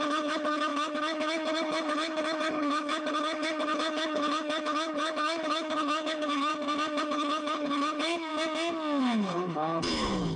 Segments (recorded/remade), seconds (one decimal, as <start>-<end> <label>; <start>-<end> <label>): 0.0-6.5 remade; 6.5-7.0 recorded; 7.0-8.3 remade; 8.3-9.0 recorded; 9.0-10.4 remade